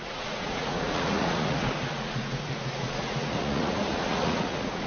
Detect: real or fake fake